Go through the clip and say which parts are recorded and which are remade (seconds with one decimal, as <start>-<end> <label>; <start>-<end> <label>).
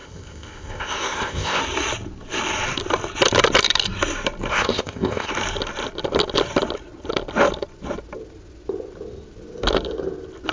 0.0-1.6 remade; 1.6-4.5 recorded; 4.5-5.3 remade; 5.3-10.5 recorded